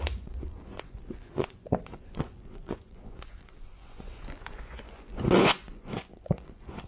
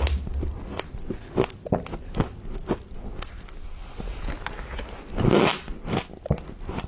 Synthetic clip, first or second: first